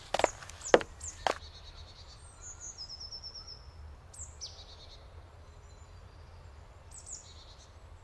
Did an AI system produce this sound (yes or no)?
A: no